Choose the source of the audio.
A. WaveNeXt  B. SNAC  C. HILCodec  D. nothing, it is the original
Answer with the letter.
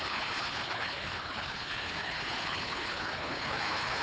C